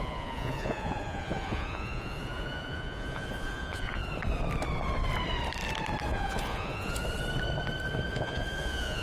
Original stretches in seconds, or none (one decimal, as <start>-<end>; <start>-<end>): 4.0-6.1; 7.0-8.1